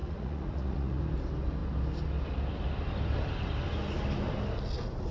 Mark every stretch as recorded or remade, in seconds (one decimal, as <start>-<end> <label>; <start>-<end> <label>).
0.0-1.0 remade; 1.0-5.1 recorded